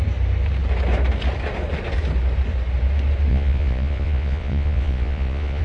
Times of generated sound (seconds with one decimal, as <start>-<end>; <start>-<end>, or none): 3.3-5.6